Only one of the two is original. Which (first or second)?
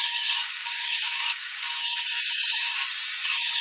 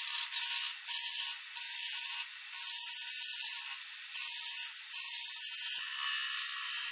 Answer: second